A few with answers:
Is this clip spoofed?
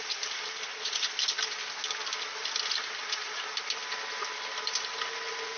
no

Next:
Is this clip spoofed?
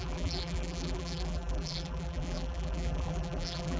yes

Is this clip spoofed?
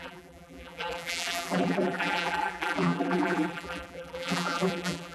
yes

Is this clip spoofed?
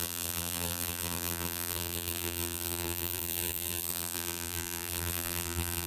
yes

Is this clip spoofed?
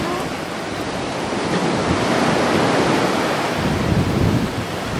yes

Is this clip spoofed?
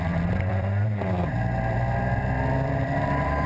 yes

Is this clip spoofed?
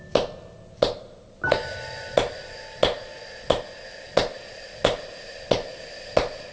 no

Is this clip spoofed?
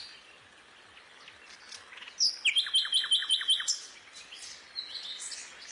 no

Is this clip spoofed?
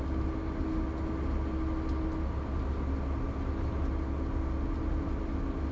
no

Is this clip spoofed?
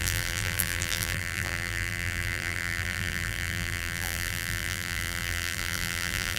yes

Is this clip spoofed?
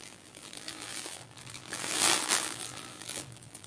yes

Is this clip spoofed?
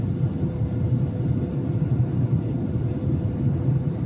yes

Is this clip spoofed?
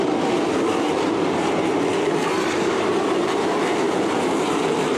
yes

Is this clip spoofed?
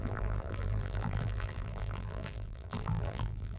yes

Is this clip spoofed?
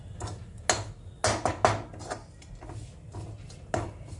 no